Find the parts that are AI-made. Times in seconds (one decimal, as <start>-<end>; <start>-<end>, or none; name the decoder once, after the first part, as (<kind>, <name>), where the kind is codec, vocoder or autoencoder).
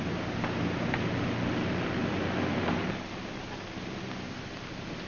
none